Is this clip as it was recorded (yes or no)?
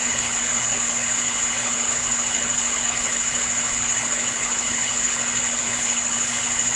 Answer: no